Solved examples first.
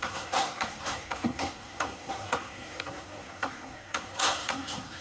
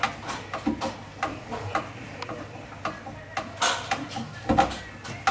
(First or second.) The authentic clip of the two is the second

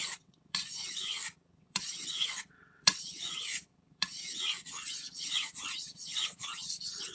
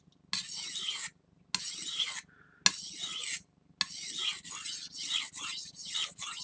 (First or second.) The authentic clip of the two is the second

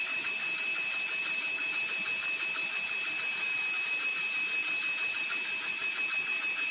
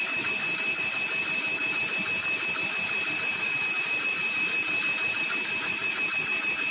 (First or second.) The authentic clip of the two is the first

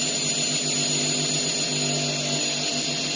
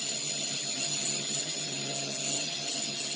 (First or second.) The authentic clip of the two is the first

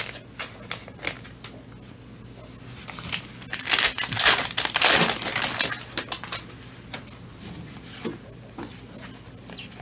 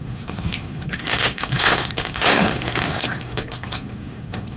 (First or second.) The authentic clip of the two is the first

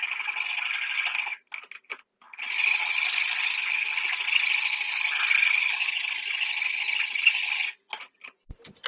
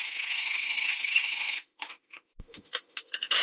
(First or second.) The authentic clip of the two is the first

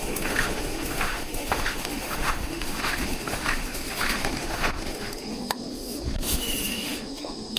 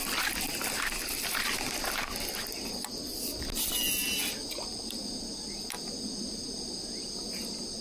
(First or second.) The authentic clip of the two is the second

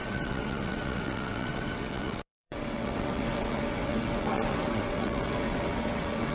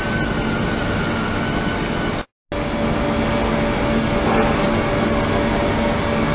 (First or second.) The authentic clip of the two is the second